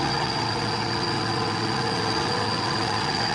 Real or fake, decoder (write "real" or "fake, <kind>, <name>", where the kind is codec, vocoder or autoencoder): fake, vocoder, WaveNeXt